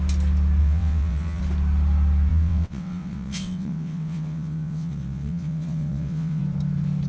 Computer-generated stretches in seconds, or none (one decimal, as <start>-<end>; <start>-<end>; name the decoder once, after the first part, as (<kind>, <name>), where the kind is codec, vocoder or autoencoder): 0.6-1.4 (vocoder, WaveNeXt); 2.3-6.4